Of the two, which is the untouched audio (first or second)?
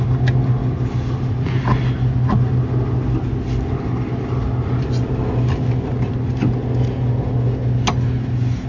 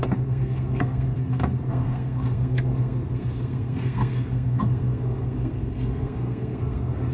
first